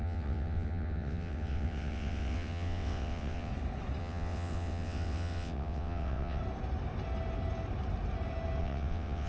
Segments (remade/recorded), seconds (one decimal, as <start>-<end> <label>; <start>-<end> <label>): 0.0-3.5 remade; 3.5-4.0 recorded; 4.0-6.4 remade; 6.4-8.6 recorded; 8.6-9.3 remade